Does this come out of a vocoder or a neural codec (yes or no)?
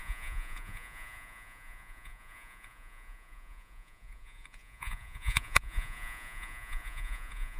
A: yes